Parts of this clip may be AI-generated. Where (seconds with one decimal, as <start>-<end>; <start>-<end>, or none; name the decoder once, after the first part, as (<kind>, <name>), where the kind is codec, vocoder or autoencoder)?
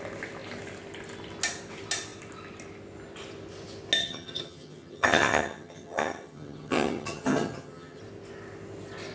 4.0-8.0 (vocoder, HiFi-GAN)